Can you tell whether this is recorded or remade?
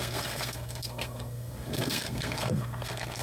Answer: remade